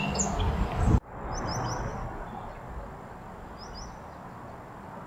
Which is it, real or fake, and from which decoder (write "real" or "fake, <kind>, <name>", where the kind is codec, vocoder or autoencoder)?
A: real